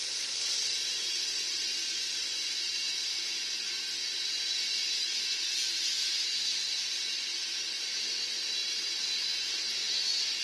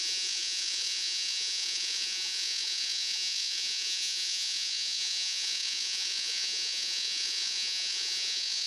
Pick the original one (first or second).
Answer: first